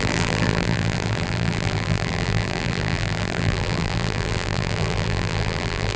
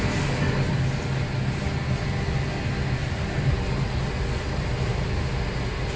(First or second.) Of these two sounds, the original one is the second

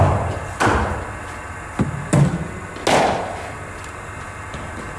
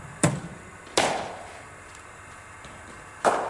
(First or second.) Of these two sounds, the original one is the first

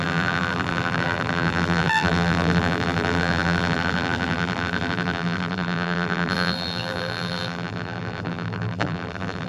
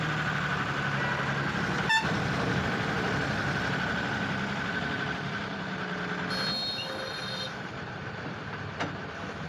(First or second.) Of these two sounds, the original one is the second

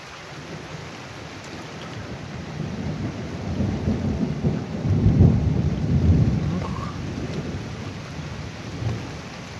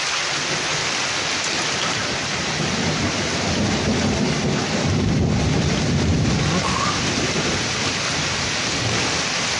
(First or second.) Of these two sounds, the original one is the second